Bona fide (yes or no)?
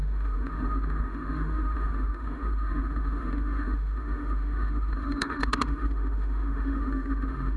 no